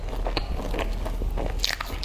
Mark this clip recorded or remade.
recorded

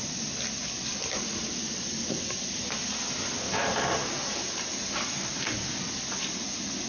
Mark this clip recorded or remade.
recorded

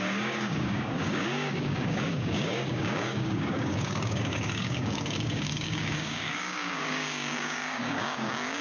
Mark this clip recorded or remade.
remade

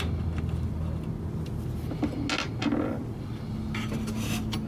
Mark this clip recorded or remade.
recorded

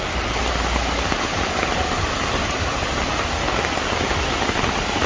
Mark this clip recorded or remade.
recorded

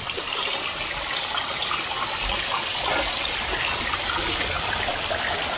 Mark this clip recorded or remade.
recorded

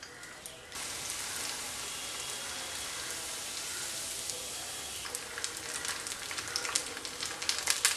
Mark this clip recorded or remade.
recorded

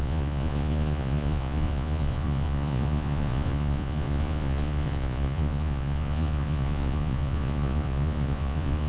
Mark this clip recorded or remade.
remade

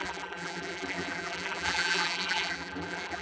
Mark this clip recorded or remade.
remade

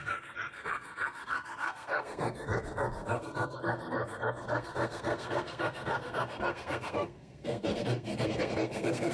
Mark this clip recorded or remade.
remade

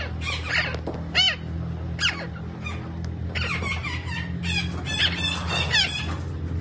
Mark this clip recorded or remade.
recorded